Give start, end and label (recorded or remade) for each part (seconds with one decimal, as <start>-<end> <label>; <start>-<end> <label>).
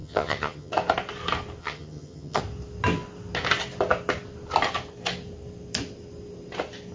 0.0-0.7 remade; 0.7-1.6 recorded; 1.6-2.4 remade; 2.4-6.9 recorded